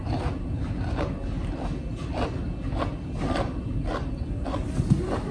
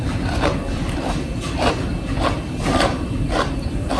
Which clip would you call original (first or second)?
first